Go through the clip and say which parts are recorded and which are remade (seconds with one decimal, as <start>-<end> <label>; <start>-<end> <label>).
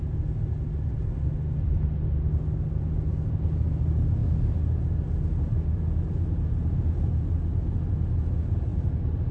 0.0-9.3 recorded